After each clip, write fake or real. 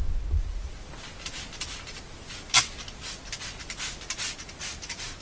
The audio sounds real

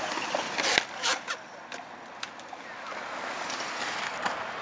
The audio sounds real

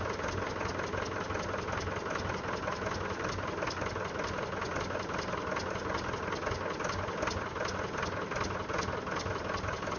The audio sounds real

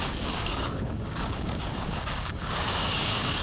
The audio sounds fake